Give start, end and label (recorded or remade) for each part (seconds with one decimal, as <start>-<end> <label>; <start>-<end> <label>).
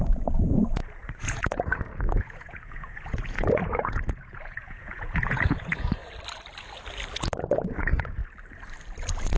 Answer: 0.0-6.0 remade; 6.0-7.4 recorded; 7.4-8.2 remade; 8.2-9.4 recorded